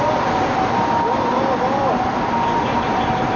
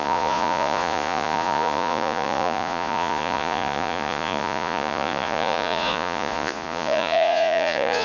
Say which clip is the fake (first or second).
second